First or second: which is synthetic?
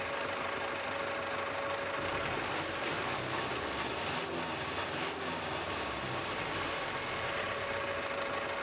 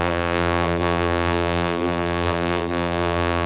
second